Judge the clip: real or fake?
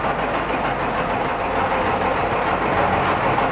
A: real